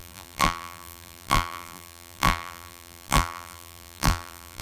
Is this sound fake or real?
fake